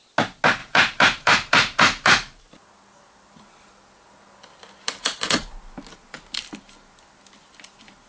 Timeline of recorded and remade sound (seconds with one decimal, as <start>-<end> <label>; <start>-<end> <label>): 0.0-0.6 recorded; 0.6-2.4 remade; 2.4-4.6 recorded; 4.6-5.3 remade; 5.3-8.1 recorded